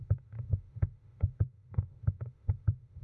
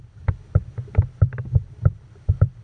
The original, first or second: second